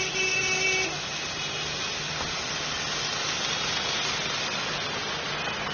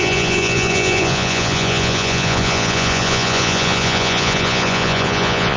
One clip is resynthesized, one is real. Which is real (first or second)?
first